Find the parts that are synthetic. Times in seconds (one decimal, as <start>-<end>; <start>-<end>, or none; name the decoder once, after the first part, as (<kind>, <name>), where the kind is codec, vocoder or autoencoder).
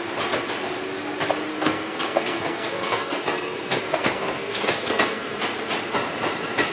1.5-5.4 (codec, SNAC)